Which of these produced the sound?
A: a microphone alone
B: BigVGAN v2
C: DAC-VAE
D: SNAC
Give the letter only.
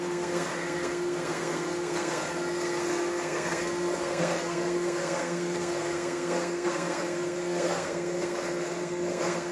D